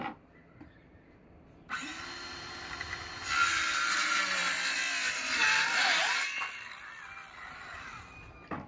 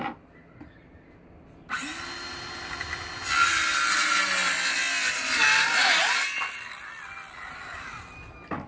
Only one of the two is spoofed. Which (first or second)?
first